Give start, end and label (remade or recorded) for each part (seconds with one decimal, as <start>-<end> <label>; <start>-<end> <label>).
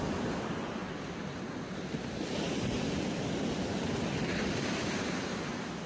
0.0-5.9 recorded